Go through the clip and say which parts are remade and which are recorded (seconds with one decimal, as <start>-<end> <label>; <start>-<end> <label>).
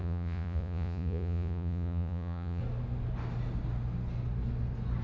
0.0-2.6 remade; 2.6-5.0 recorded